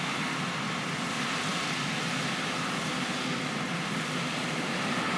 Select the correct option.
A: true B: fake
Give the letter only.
A